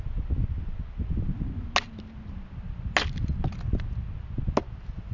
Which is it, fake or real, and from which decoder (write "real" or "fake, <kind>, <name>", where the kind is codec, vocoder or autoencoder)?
real